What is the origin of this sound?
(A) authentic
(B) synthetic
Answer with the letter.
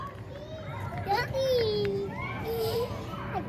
A